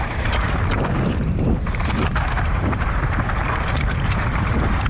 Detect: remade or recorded remade